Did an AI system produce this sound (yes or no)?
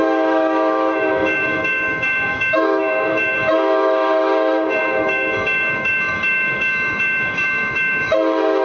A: yes